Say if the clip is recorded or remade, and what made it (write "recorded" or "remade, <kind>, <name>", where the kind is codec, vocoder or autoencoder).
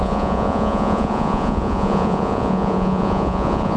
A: remade, vocoder, Vocos